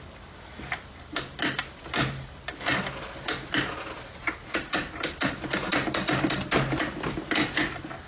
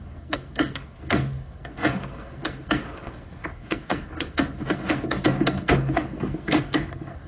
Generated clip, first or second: second